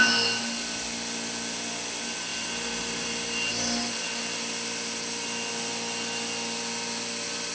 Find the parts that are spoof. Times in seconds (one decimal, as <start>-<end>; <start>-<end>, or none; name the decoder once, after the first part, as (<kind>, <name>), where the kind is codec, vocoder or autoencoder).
none